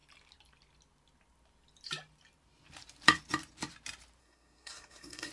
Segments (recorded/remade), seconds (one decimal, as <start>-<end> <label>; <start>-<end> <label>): 0.0-4.2 recorded; 4.2-5.3 remade